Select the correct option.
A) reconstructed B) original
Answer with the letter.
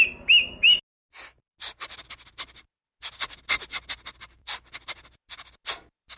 B